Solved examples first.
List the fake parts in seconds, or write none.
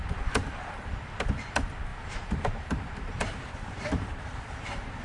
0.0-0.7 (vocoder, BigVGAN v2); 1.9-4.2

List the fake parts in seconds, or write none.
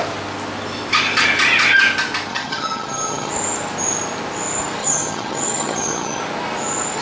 2.3-3.3 (vocoder, HiFi-GAN); 4.8-6.2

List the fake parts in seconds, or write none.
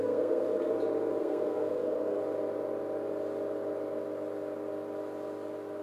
0.0-0.7 (codec, SNAC); 1.2-2.2